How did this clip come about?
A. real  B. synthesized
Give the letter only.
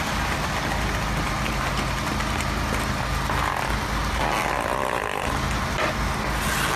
A